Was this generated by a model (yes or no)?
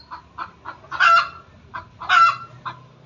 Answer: no